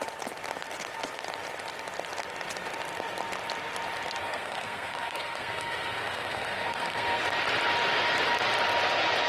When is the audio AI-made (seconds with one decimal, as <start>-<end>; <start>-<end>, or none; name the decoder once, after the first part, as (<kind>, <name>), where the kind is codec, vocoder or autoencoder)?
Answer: 4.2-7.2 (codec, SNAC)